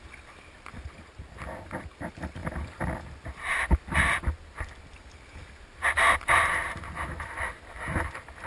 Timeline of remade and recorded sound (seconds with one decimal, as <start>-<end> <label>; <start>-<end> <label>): 0.0-8.5 recorded